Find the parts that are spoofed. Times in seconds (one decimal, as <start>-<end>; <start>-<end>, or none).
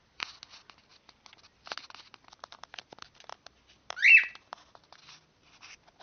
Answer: none